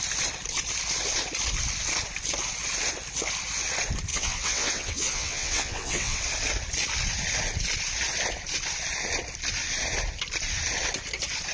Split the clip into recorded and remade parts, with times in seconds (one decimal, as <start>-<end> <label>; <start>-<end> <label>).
0.0-4.1 recorded; 4.1-6.2 remade; 6.2-11.5 recorded